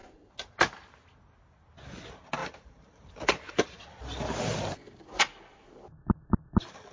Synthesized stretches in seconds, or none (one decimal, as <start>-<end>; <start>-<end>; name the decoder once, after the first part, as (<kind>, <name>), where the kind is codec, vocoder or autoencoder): 0.0-0.5 (vocoder, BigVGAN v2); 2.4-3.8